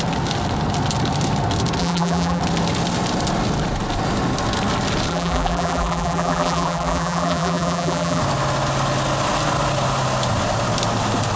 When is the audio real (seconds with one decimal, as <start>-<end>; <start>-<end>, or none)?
0.0-1.8; 2.4-5.1; 8.2-11.4